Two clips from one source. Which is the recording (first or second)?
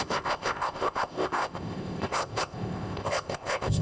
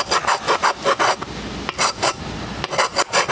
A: second